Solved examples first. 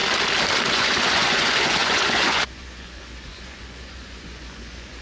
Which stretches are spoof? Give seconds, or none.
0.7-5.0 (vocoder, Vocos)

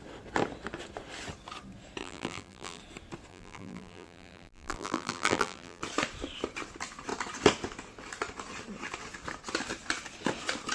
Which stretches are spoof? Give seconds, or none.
2.0-2.8 (vocoder, BigVGAN v2); 3.3-5.8

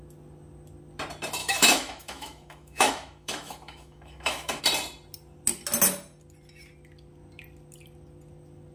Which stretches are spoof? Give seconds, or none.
1.4-4.6 (autoencoder, DAC-VAE)

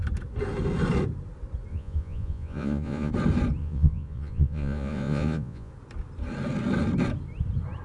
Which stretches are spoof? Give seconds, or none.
1.7-3.1 (vocoder, Vocos); 3.6-5.7

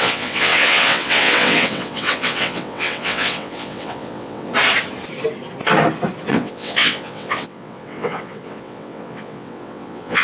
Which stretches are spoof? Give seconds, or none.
0.0-4.5 (vocoder, WaveNeXt); 6.3-10.2

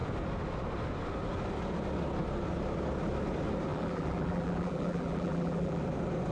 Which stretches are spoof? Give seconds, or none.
3.7-5.8 (vocoder, BigVGAN v2)